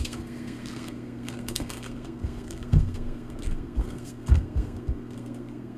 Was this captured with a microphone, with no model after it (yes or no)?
no